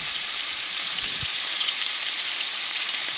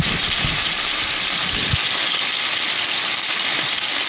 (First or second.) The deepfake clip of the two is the first